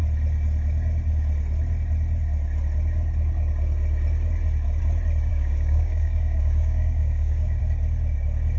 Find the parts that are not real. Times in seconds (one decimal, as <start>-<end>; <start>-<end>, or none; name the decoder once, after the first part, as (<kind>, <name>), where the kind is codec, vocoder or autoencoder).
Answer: 5.3-7.6 (codec, DAC)